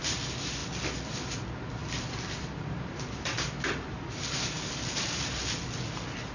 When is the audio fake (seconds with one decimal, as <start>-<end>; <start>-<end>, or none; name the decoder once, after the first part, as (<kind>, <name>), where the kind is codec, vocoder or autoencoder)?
1.8-5.6 (vocoder, BigVGAN v2)

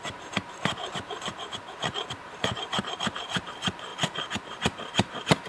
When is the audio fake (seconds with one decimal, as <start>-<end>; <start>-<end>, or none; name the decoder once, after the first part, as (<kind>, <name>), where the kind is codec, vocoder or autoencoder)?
0.0-3.9 (vocoder, BigVGAN v2); 4.4-5.5